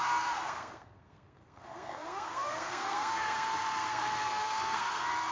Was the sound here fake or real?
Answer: fake